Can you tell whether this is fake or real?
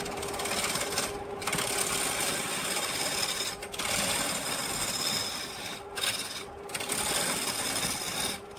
real